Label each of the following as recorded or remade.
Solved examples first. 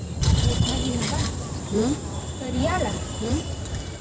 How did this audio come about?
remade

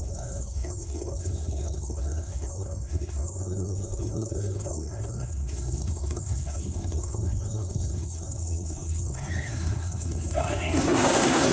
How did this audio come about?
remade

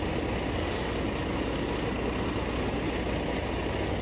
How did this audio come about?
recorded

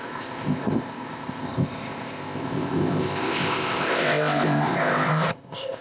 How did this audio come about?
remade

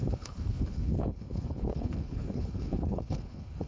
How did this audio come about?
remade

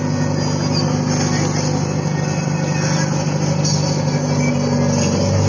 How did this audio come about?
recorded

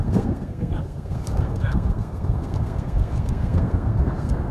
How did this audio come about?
remade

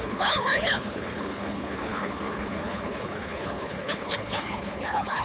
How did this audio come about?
remade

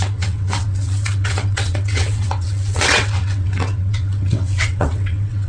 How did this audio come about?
remade